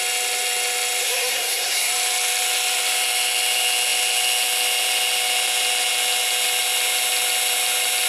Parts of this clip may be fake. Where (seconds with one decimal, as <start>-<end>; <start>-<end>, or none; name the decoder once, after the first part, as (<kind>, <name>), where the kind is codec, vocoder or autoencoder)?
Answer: 1.0-1.9 (codec, SNAC)